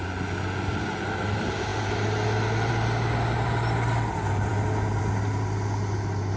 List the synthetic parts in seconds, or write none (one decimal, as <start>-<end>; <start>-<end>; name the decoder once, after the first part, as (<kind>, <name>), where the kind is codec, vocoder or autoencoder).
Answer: none